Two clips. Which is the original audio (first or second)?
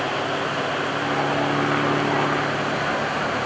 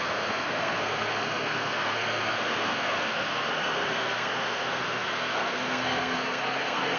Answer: first